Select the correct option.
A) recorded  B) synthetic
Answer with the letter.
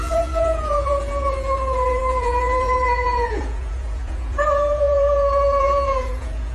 B